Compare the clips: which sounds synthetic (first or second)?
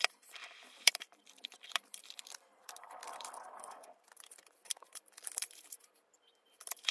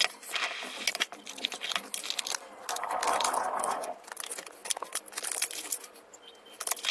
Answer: first